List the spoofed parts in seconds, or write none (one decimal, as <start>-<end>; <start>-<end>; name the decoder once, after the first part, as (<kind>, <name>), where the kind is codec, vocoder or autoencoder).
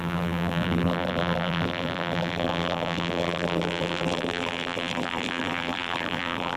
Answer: 0.0-6.6 (vocoder, BigVGAN v2)